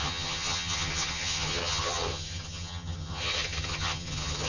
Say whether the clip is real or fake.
fake